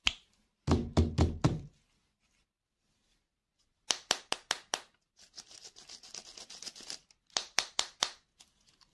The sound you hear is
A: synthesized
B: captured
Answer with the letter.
B